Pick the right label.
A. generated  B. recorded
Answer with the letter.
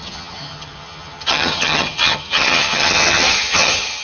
A